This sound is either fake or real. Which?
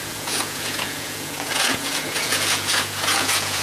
fake